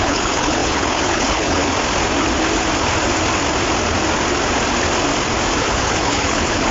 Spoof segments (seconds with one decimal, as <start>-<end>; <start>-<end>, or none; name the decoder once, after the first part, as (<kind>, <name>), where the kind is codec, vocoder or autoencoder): 0.0-1.6 (codec, HILCodec); 5.6-6.7